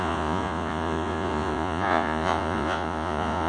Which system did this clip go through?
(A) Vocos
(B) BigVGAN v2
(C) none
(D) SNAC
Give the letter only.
A